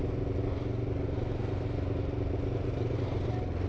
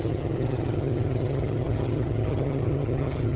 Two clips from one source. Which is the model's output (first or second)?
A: second